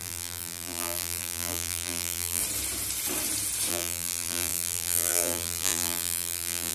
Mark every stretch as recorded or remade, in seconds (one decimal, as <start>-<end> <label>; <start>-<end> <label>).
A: 0.0-2.4 remade; 2.4-3.7 recorded; 3.7-6.7 remade